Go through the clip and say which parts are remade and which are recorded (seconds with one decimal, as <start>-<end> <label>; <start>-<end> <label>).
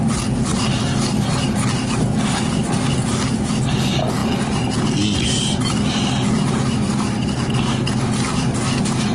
0.0-9.1 recorded